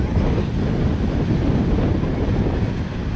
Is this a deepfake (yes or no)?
no